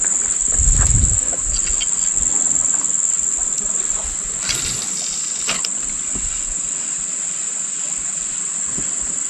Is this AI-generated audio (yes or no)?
no